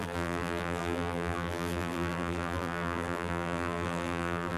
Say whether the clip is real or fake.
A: fake